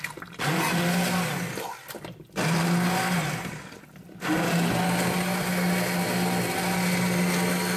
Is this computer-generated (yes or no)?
no